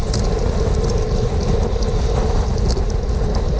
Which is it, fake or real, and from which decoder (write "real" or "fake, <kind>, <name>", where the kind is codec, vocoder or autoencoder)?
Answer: real